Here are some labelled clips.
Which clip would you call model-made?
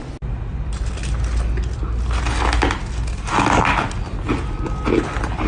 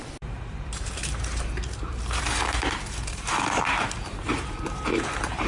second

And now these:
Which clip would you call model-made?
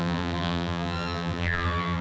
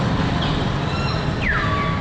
first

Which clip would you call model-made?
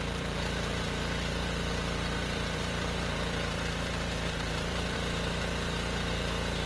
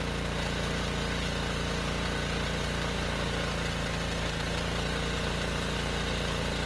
first